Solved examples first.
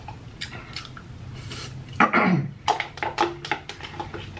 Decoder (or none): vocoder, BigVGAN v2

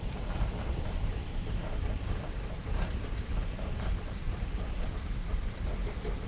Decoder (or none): vocoder, BigVGAN v2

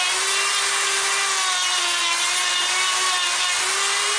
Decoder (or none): none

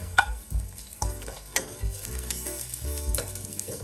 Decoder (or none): codec, SNAC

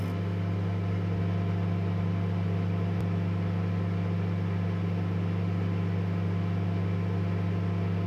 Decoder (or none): none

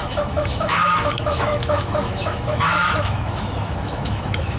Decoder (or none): autoencoder, DAC-VAE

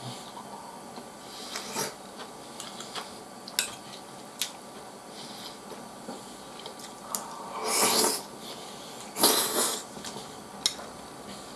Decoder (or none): none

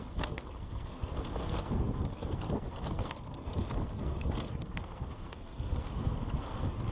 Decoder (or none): codec, SNAC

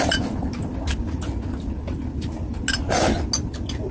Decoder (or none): none